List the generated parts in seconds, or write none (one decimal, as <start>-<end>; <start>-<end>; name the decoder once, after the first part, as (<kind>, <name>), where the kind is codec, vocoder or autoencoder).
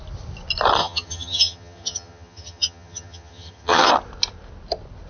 0.8-3.9 (vocoder, HiFi-GAN)